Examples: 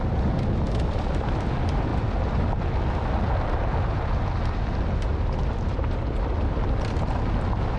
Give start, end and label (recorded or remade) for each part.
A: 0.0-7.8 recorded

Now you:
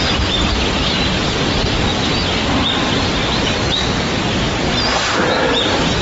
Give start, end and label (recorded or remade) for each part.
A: 0.0-6.0 recorded

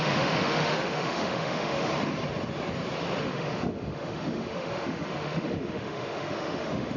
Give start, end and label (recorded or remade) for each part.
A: 0.0-1.9 remade; 1.9-3.2 recorded; 3.2-7.0 remade

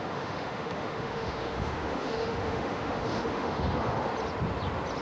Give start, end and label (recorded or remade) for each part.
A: 0.0-4.1 remade; 4.1-5.0 recorded

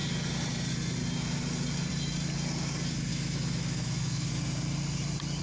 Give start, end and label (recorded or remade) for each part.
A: 0.0-3.1 recorded; 3.1-4.3 remade; 4.3-5.4 recorded

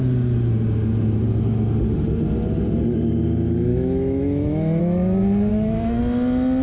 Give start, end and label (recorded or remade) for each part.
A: 0.0-3.7 recorded; 3.7-4.8 remade; 4.8-5.5 recorded; 5.5-6.0 remade; 6.0-6.6 recorded

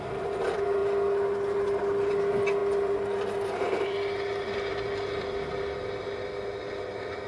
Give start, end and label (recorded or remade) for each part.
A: 0.0-7.3 recorded